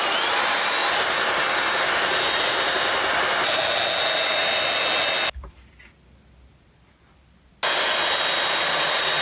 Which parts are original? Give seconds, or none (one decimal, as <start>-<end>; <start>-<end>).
0.0-9.2